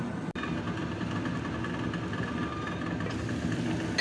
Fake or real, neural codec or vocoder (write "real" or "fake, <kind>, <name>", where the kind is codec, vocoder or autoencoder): real